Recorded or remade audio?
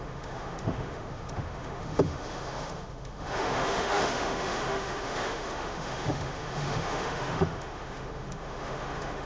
remade